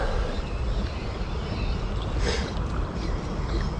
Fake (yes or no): no